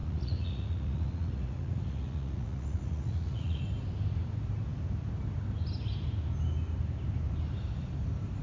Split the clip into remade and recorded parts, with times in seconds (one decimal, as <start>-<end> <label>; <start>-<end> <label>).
0.0-3.6 remade; 3.6-8.4 recorded